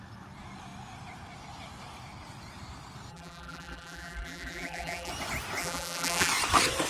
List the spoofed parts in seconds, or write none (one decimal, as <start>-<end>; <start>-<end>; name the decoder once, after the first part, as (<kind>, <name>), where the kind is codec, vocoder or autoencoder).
3.1-5.1 (vocoder, BigVGAN v2); 5.6-6.3